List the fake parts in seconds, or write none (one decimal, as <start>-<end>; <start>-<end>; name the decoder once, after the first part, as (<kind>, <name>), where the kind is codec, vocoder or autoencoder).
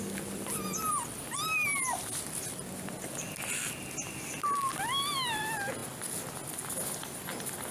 none